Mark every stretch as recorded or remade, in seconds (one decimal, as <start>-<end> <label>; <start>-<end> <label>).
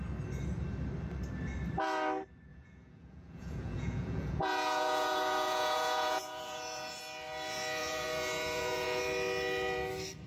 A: 0.0-2.5 recorded; 2.5-7.0 remade; 7.0-7.8 recorded; 7.8-9.0 remade; 9.0-10.3 recorded